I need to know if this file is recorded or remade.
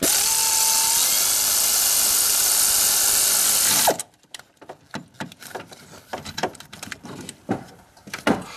recorded